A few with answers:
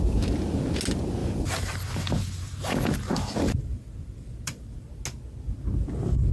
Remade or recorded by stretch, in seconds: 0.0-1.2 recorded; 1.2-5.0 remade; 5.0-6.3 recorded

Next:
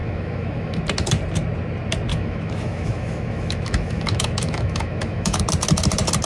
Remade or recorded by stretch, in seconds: 0.0-0.8 remade; 0.8-2.1 recorded; 2.1-5.4 remade; 5.4-6.2 recorded

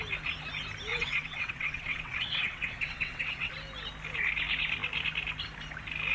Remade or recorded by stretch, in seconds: 0.0-0.9 recorded; 0.9-3.5 remade; 3.5-6.1 recorded

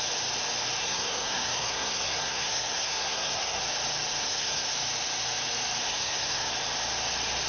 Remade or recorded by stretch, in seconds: 0.0-0.8 recorded; 0.8-3.6 remade; 3.6-4.2 recorded; 4.2-4.7 remade; 4.7-5.8 recorded; 5.8-6.5 remade; 6.5-7.5 recorded

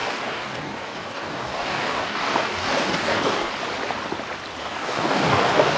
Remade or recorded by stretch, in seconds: 0.0-3.5 remade; 3.5-4.6 recorded; 4.6-5.8 remade

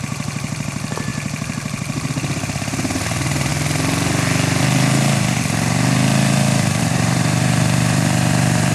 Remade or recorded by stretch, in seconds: 0.0-3.5 remade; 3.5-6.8 recorded; 6.8-8.7 remade

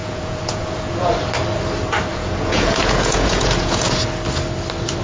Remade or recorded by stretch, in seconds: 0.0-1.1 remade; 1.1-2.1 recorded; 2.1-4.0 remade; 4.0-5.0 recorded